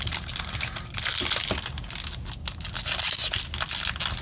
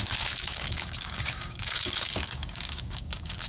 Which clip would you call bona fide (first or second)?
first